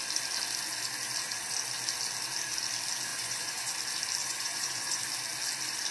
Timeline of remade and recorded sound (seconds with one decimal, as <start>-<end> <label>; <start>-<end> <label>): 0.0-3.1 recorded; 3.1-3.7 remade; 3.7-4.2 recorded; 4.2-5.0 remade; 5.0-5.9 recorded